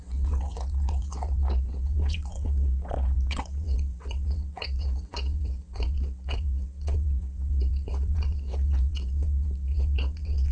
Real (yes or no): no